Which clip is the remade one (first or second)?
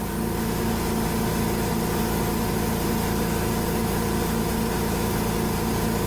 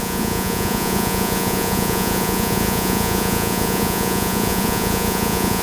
second